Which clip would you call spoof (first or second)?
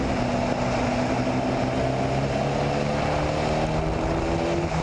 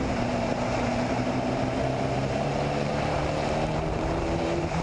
second